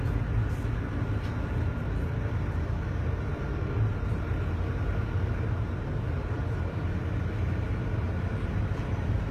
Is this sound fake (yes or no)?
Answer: no